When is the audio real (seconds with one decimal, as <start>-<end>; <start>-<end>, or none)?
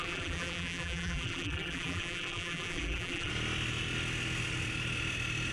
3.3-5.5